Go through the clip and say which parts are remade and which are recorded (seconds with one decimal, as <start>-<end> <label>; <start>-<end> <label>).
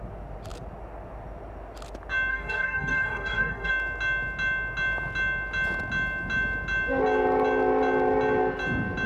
0.0-2.3 recorded; 2.3-3.7 remade; 3.7-9.1 recorded